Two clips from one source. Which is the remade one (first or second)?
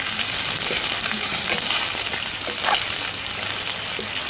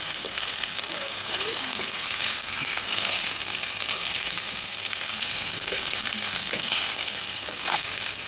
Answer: second